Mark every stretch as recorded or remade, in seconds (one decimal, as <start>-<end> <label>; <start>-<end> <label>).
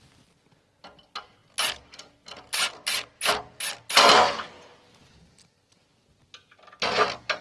0.0-7.4 recorded